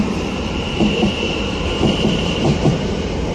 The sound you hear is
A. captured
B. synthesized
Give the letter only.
B